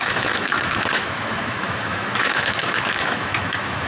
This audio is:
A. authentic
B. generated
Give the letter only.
B